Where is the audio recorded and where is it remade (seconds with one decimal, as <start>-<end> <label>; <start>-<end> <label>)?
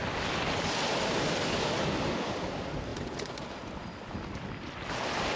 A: 0.0-5.4 recorded